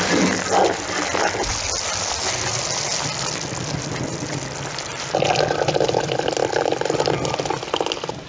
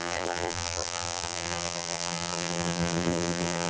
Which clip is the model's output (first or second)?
second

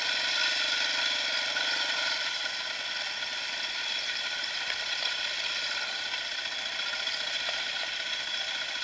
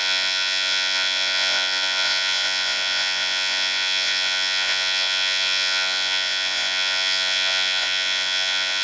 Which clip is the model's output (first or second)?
second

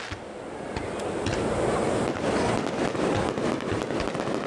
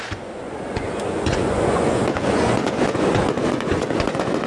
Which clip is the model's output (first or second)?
second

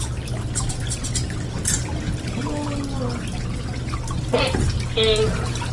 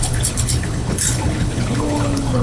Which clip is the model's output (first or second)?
second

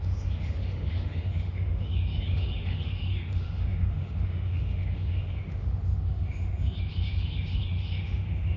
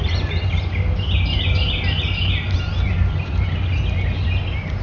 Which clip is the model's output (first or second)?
first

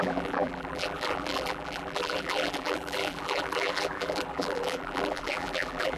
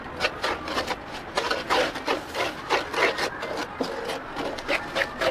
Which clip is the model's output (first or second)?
first